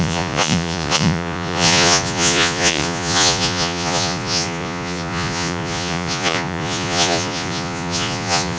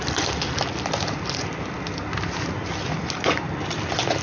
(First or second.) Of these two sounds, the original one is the second